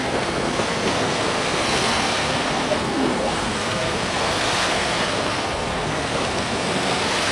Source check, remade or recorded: remade